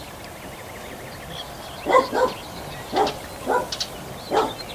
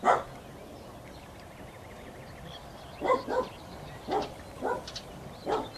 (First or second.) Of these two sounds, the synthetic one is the second